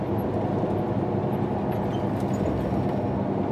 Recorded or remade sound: recorded